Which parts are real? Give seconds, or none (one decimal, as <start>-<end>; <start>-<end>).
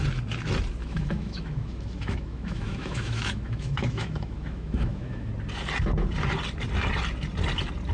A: 0.0-0.8; 5.3-7.9